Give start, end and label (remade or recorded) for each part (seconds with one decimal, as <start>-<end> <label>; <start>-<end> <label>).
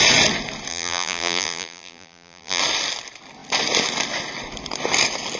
0.0-0.7 recorded; 0.7-2.6 remade; 2.6-5.4 recorded